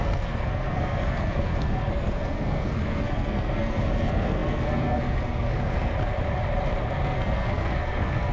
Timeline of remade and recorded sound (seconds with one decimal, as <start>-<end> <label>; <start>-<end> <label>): 0.0-5.9 remade; 5.9-6.9 recorded; 6.9-8.3 remade